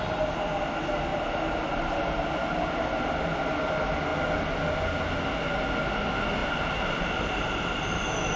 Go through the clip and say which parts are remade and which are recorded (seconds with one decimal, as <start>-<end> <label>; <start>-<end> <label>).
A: 0.0-1.1 recorded; 1.1-2.0 remade; 2.0-6.4 recorded; 6.4-8.0 remade; 8.0-8.4 recorded